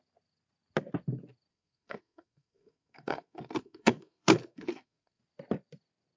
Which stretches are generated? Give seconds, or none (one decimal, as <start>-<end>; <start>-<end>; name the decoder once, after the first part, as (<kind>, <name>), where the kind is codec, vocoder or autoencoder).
1.5-5.2 (codec, SNAC)